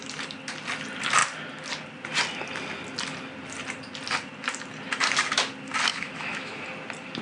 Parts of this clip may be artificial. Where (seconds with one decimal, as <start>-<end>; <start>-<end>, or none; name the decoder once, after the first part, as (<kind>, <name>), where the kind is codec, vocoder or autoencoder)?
5.9-6.6 (autoencoder, DAC-VAE)